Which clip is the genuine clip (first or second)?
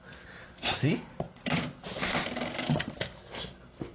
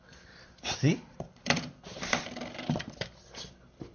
first